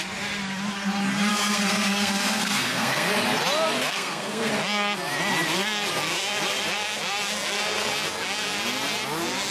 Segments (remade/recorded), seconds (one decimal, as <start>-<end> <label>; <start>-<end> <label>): 0.0-1.3 recorded; 1.3-3.1 remade; 3.1-3.9 recorded; 3.9-4.5 remade; 4.5-9.5 recorded